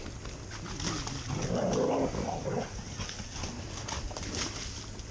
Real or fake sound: real